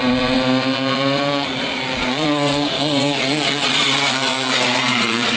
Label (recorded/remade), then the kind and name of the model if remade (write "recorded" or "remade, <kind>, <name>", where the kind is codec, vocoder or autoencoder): remade, vocoder, Vocos